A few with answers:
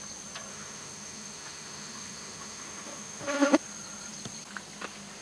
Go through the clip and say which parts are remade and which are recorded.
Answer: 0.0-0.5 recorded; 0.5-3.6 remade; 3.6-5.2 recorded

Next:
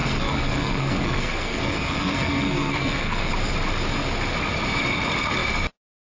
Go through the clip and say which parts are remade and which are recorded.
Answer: 0.0-3.3 remade; 3.3-6.1 recorded

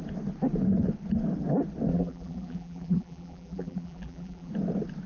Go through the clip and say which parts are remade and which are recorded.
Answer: 0.0-1.9 recorded; 1.9-4.5 remade; 4.5-5.1 recorded

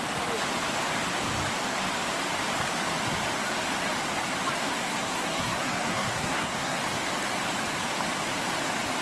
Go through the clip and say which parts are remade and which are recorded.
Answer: 0.0-4.6 recorded; 4.6-6.8 remade; 6.8-9.0 recorded

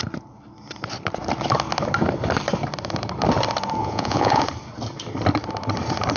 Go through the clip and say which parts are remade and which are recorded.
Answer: 0.0-3.8 recorded; 3.8-4.4 remade; 4.4-6.2 recorded

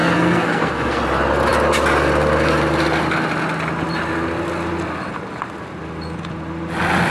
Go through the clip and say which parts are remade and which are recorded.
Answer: 0.0-1.0 remade; 1.0-7.1 recorded

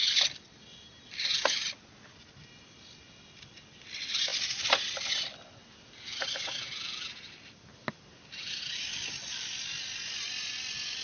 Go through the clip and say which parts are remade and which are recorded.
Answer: 0.0-11.0 recorded

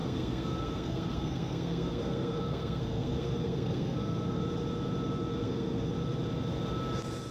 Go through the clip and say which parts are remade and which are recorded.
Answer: 0.0-4.4 remade; 4.4-5.4 recorded; 5.4-5.9 remade; 5.9-7.3 recorded